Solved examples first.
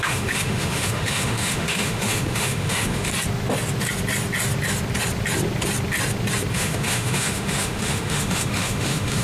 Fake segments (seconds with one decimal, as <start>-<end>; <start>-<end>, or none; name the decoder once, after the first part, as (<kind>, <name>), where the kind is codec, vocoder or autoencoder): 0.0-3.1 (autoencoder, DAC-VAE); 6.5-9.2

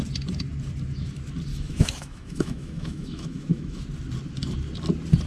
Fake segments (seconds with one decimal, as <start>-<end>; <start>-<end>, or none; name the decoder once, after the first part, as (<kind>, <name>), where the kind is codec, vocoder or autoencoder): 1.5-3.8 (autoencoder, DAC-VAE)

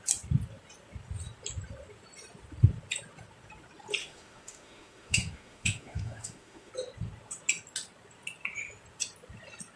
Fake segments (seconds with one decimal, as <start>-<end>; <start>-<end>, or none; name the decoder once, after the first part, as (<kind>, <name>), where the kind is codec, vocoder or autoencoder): 4.0-6.7 (autoencoder, DAC-VAE)

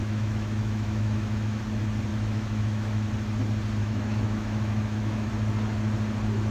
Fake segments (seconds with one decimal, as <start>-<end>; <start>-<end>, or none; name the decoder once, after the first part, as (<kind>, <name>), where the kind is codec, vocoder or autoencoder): 0.0-1.6 (autoencoder, DAC-VAE); 2.1-3.1; 3.8-5.3